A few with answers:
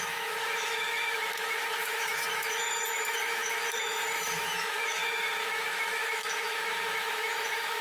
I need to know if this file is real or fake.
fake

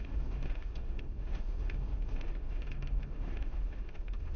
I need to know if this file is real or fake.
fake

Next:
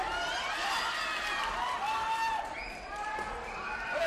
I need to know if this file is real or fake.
real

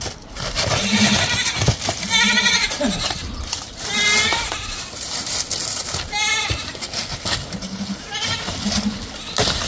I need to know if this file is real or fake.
real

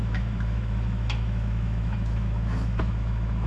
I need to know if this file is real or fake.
fake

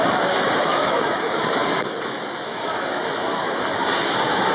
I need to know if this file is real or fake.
fake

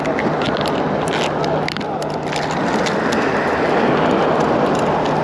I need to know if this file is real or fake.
real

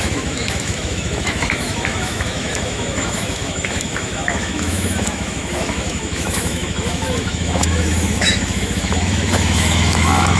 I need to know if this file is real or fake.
fake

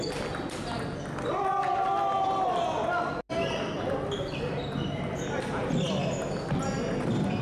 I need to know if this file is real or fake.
real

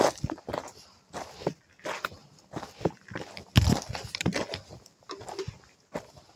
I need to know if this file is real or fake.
real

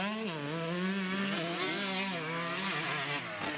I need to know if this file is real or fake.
real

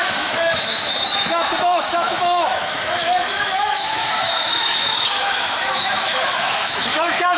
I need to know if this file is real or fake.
fake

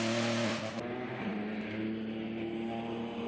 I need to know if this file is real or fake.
real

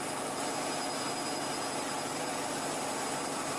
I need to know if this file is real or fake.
real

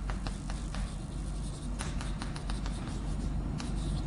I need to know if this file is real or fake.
real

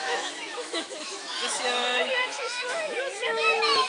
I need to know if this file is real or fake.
fake